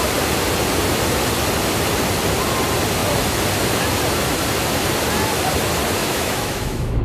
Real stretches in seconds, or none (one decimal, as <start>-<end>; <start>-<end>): 0.0-6.0